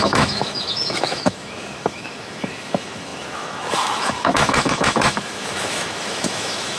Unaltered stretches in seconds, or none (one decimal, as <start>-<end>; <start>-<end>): none